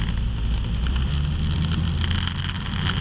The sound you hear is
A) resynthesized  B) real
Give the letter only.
B